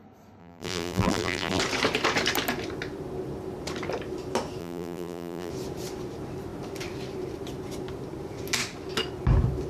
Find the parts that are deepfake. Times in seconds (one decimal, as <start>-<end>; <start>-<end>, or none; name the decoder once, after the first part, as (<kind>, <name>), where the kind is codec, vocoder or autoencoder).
0.4-1.6 (vocoder, BigVGAN v2); 4.6-5.5